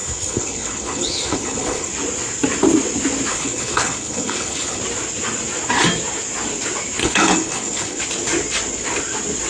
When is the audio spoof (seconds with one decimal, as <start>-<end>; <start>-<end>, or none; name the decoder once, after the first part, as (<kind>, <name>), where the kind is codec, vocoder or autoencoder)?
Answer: 0.0-1.9 (codec, HILCodec); 3.3-4.8; 7.0-8.0